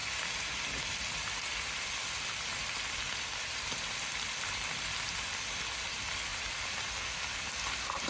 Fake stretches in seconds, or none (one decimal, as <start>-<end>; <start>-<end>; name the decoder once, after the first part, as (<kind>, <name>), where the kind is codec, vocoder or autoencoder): 6.3-6.9 (vocoder, BigVGAN v2)